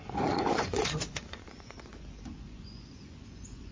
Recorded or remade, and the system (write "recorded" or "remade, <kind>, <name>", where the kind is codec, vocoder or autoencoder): remade, vocoder, Vocos